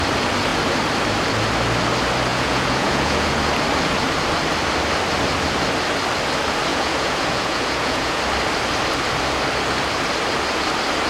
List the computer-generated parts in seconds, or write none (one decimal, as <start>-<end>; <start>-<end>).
2.3-3.4; 6.7-8.2